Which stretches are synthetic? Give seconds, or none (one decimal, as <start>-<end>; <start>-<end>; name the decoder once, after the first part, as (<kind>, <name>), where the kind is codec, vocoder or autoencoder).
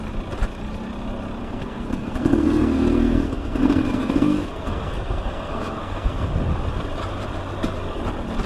1.4-6.3 (codec, SNAC)